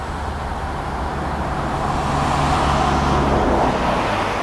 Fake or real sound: real